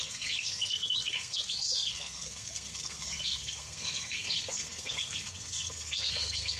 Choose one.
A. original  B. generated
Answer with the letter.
B